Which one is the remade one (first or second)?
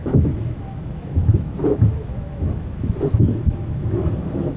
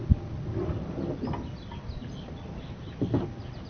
first